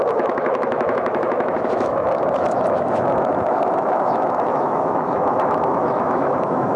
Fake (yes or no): yes